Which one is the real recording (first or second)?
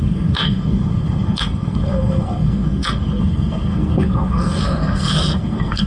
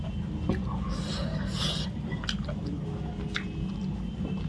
second